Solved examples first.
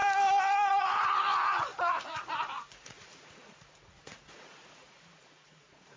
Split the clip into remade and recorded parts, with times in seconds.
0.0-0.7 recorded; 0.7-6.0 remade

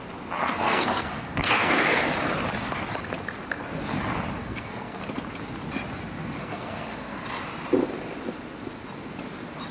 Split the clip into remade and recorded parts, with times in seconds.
0.0-0.4 recorded; 0.4-2.0 remade; 2.0-4.4 recorded; 4.4-5.0 remade; 5.0-6.4 recorded; 6.4-7.2 remade; 7.2-9.7 recorded

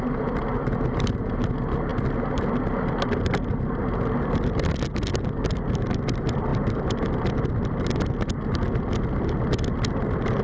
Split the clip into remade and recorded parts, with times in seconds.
0.0-10.4 recorded